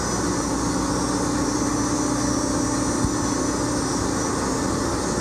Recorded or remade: recorded